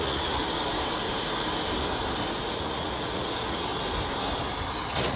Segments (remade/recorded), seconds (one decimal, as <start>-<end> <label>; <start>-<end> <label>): 0.0-0.4 remade; 0.4-2.4 recorded; 2.4-3.7 remade; 3.7-4.8 recorded; 4.8-5.2 remade